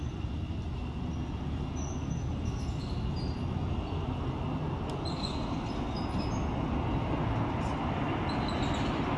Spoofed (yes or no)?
no